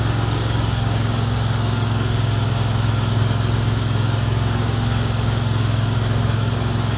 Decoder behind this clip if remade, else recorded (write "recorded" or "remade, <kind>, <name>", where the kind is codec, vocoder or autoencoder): remade, codec, DAC